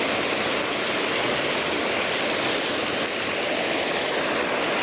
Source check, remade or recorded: recorded